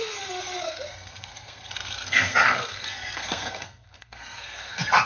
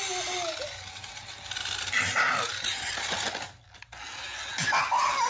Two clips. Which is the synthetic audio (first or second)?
first